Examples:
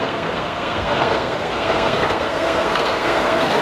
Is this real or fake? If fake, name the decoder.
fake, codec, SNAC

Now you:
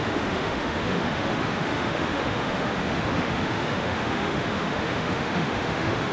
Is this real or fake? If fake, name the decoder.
fake, autoencoder, DAC-VAE